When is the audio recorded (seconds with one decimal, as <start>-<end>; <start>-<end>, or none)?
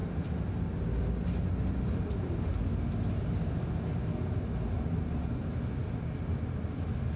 0.0-7.2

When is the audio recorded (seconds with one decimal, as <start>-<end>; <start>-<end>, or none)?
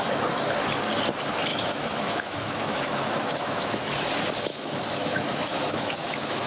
0.0-1.5; 3.8-4.5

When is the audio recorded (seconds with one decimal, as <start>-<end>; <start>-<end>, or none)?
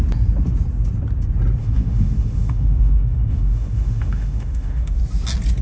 0.0-1.6; 5.0-5.6